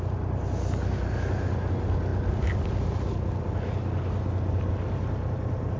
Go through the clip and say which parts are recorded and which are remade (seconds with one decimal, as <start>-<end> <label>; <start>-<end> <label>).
0.0-5.8 recorded